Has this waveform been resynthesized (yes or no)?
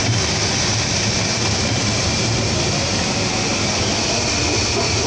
no